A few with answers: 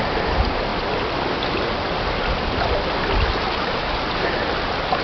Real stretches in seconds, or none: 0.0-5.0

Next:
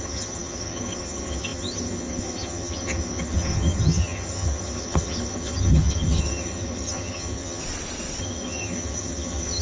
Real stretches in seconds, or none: 7.6-8.2

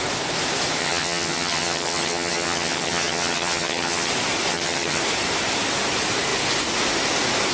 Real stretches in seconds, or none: 0.0-0.8; 4.1-4.5; 5.0-7.5

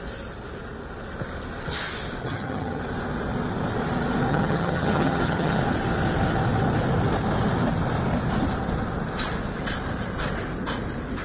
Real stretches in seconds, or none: 0.0-2.2; 2.8-4.3; 5.6-11.2